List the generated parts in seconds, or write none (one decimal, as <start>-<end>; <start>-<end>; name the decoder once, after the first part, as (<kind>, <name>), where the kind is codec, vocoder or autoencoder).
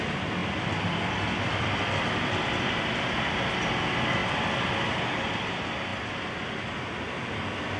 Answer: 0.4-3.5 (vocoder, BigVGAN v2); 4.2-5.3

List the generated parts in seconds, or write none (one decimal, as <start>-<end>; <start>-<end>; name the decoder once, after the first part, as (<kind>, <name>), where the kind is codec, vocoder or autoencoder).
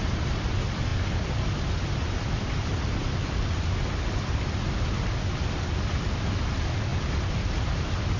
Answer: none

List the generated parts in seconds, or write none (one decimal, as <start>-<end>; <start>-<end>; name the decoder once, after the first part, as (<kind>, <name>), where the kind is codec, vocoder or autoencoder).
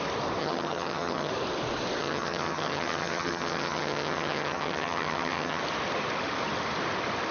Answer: 0.4-1.3 (vocoder, HiFi-GAN); 2.0-5.6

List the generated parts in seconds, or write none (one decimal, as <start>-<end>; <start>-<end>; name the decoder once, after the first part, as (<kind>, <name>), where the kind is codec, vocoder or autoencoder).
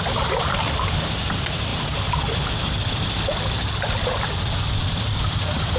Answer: 0.0-5.8 (vocoder, BigVGAN v2)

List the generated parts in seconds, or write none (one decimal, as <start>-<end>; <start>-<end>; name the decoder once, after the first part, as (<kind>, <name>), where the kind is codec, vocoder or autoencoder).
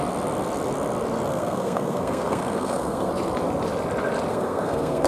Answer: 1.3-3.1 (codec, SNAC); 4.3-5.1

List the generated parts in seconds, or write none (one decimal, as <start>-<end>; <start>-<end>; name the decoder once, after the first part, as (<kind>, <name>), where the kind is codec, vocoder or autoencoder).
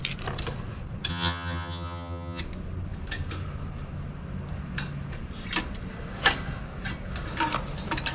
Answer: 1.1-2.4 (vocoder, HiFi-GAN)